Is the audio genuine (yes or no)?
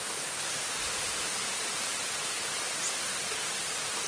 yes